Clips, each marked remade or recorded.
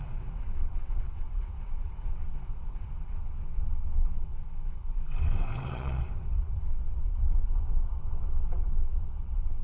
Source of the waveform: remade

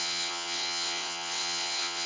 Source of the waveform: remade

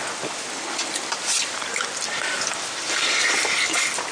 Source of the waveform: recorded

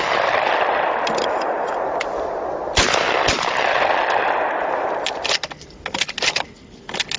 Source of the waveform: recorded